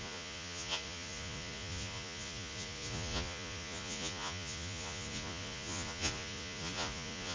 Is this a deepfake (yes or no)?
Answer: yes